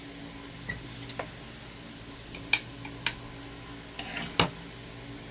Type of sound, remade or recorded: recorded